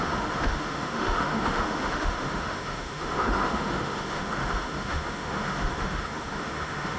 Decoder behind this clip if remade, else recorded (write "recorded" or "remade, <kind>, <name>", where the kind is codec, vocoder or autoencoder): remade, autoencoder, DAC-VAE